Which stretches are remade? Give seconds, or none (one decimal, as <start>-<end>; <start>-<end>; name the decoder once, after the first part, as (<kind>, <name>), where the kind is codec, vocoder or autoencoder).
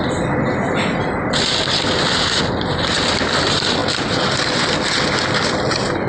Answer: none